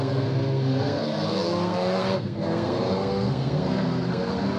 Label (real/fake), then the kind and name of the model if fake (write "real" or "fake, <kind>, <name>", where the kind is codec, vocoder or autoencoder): fake, codec, SNAC